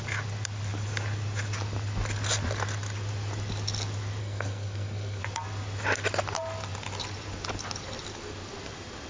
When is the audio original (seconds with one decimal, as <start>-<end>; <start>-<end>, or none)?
0.0-4.2; 5.2-9.1